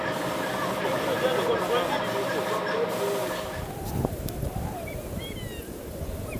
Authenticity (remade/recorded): recorded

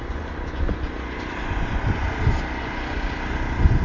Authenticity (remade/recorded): remade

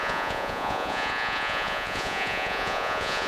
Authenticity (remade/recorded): remade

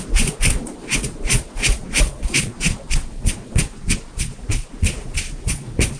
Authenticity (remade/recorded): remade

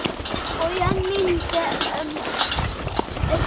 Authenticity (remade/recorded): recorded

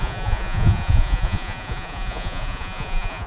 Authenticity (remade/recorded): remade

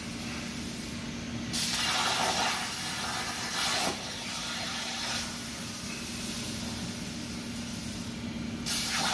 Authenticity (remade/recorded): recorded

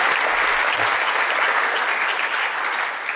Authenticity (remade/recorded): recorded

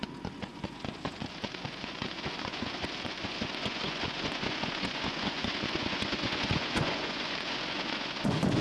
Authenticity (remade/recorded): remade